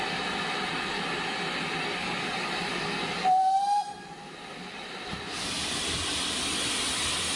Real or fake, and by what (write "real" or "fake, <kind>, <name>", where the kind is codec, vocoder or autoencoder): real